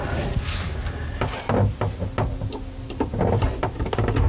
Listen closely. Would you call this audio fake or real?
real